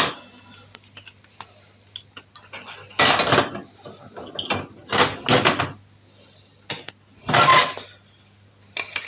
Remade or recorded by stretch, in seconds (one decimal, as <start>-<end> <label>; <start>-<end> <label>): 0.0-9.1 recorded